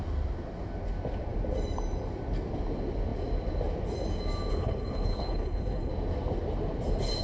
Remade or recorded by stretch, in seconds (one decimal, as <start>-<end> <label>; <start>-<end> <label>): 0.0-4.5 recorded; 4.5-5.9 remade; 5.9-7.2 recorded